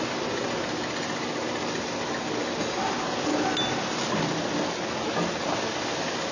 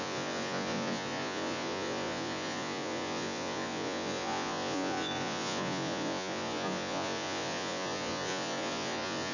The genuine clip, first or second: first